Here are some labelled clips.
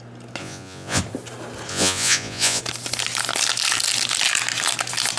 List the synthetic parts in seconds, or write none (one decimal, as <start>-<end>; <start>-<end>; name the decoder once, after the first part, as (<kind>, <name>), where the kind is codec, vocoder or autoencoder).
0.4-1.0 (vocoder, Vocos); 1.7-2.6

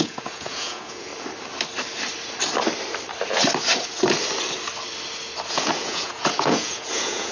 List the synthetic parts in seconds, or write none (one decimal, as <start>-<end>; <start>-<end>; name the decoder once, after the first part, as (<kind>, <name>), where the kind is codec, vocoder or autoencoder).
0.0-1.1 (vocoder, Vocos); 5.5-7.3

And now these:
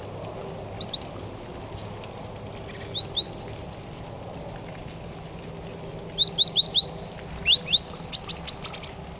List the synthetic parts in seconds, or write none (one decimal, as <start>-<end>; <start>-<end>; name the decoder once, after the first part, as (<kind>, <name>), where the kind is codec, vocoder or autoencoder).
none

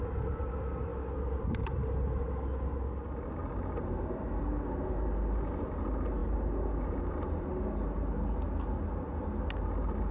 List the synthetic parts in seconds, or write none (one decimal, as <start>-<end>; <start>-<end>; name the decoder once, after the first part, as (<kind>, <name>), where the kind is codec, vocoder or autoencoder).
none

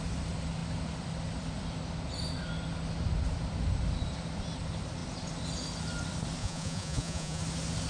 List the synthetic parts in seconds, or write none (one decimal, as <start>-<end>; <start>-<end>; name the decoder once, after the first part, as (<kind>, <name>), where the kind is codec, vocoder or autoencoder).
6.4-7.4 (vocoder, Vocos)